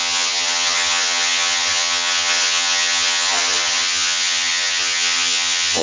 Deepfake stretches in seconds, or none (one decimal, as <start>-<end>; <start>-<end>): 0.0-5.8